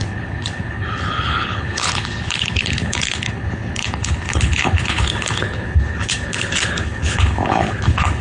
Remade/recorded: remade